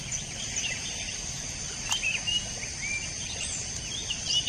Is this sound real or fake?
real